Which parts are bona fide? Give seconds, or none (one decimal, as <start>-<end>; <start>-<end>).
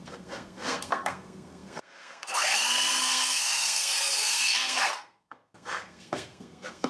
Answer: none